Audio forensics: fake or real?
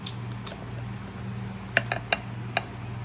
real